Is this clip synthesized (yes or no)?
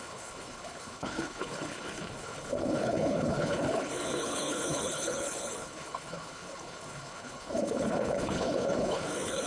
yes